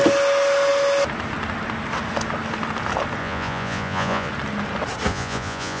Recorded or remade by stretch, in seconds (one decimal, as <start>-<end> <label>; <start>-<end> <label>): 0.0-3.2 recorded; 3.2-4.3 remade; 4.3-5.1 recorded; 5.1-5.8 remade

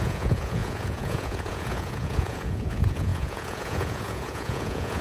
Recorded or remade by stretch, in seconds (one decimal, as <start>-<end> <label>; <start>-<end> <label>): 0.0-5.0 remade

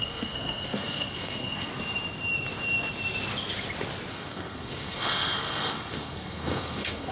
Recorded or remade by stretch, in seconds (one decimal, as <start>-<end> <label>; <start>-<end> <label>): 0.0-1.7 remade; 1.7-4.1 recorded; 4.1-7.1 remade

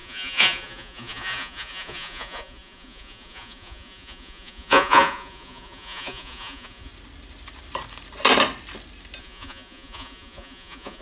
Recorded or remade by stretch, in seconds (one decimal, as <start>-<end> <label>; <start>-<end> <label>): 0.0-6.9 remade; 6.9-9.2 recorded; 9.2-11.0 remade

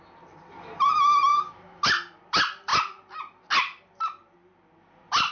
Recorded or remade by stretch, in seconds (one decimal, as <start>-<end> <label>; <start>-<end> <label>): 0.0-1.3 recorded; 1.3-1.8 remade; 1.8-5.3 recorded

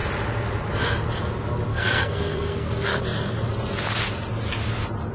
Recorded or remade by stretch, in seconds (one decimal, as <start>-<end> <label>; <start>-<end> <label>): 0.0-1.7 recorded; 1.7-3.0 remade; 3.0-5.1 recorded

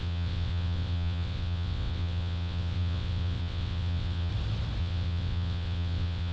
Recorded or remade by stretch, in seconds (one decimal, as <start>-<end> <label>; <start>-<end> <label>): 0.0-4.3 remade; 4.3-4.8 recorded; 4.8-6.3 remade